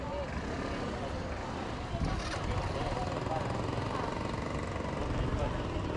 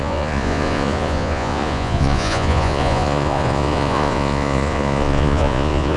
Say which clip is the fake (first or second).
second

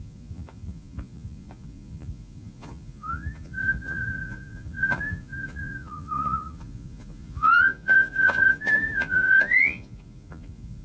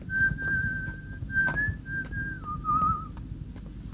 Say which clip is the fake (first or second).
first